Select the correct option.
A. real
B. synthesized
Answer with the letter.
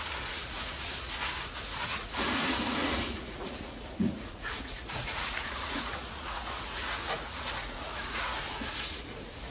B